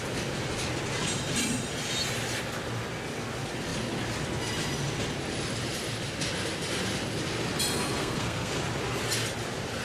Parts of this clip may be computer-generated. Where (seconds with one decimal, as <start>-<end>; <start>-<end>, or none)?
8.0-8.5